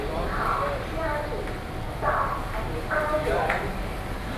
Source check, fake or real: real